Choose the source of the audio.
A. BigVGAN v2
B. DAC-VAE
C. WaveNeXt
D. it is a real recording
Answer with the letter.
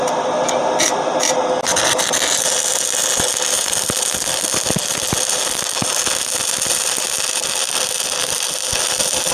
D